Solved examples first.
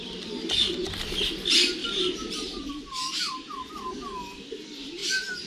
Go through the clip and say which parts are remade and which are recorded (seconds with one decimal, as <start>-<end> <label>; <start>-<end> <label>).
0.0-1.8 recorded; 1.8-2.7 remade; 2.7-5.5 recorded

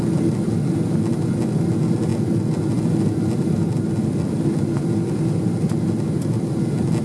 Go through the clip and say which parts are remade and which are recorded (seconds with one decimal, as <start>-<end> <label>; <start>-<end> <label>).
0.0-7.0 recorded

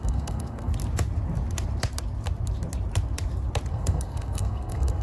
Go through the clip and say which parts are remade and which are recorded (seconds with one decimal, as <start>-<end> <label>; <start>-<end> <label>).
0.0-0.7 remade; 0.7-3.7 recorded; 3.7-5.0 remade

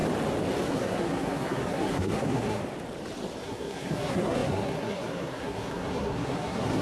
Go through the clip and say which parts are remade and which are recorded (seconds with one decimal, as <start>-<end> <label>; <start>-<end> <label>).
0.0-0.7 recorded; 0.7-2.6 remade; 2.6-3.4 recorded; 3.4-6.8 remade

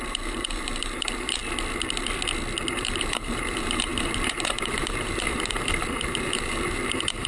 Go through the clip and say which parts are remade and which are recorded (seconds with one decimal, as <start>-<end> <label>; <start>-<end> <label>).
0.0-1.4 remade; 1.4-2.7 recorded; 2.7-7.3 remade

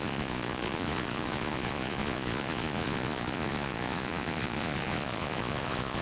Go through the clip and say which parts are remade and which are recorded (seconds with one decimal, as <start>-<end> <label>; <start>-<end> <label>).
0.0-6.0 remade

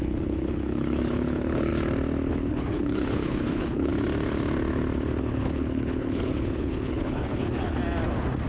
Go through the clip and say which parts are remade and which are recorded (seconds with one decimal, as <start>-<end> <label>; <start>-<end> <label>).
0.0-1.7 remade; 1.7-2.3 recorded; 2.3-3.9 remade; 3.9-5.2 recorded; 5.2-7.8 remade; 7.8-8.5 recorded